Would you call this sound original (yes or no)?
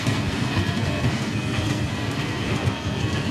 no